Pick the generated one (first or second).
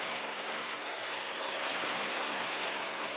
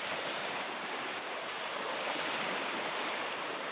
first